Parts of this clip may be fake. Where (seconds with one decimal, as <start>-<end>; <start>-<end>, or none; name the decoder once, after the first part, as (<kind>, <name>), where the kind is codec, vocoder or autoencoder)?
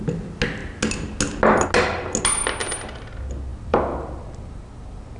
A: 3.5-5.2 (vocoder, BigVGAN v2)